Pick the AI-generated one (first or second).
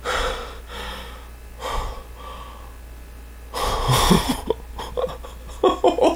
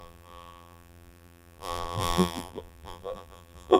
second